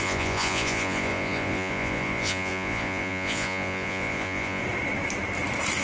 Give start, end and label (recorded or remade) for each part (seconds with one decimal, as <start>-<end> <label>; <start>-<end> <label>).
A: 0.0-4.6 remade; 4.6-5.8 recorded